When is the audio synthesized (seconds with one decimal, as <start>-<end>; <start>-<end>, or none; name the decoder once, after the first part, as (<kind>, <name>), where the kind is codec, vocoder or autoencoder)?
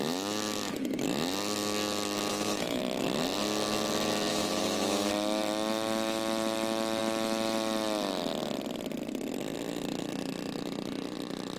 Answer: 2.3-2.8 (autoencoder, DAC-VAE); 4.3-5.1